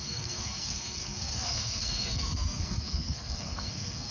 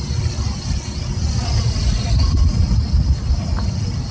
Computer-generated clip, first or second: first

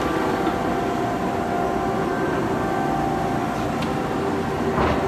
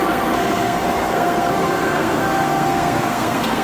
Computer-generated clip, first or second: second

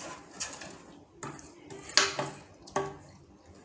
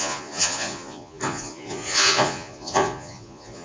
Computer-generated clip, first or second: second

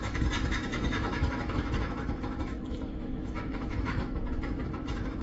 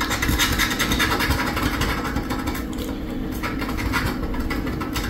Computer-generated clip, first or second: first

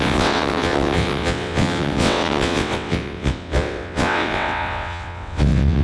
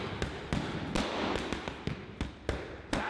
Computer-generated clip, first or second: first